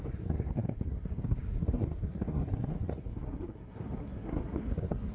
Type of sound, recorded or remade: remade